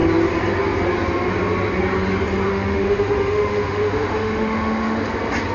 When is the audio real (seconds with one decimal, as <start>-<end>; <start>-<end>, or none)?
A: 0.0-2.5; 5.1-5.5